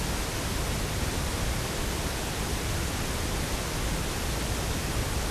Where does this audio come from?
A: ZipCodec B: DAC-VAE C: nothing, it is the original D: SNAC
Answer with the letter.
C